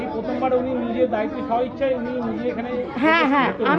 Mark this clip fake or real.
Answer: real